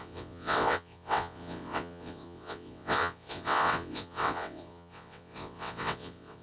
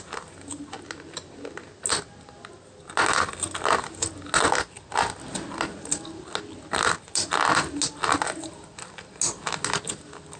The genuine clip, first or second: second